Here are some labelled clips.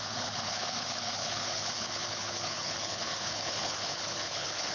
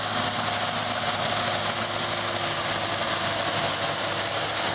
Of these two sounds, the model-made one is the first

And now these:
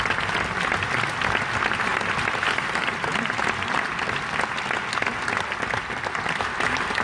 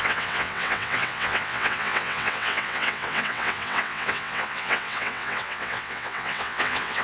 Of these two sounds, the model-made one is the second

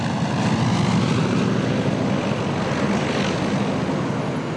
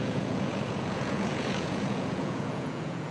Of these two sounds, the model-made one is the second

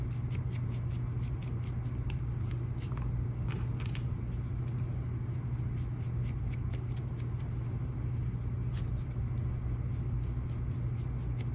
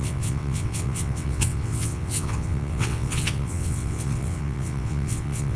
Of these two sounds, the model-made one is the second